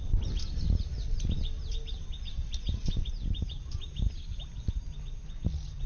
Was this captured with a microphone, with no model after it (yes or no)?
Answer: yes